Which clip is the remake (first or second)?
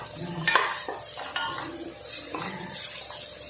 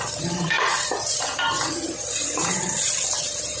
second